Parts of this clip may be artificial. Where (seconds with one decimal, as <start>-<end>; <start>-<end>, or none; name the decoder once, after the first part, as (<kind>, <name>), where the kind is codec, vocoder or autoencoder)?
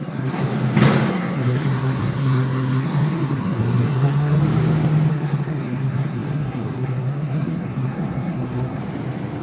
0.0-0.5 (codec, SNAC); 1.1-4.4; 5.1-8.8